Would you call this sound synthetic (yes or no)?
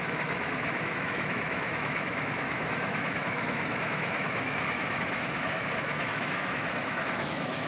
yes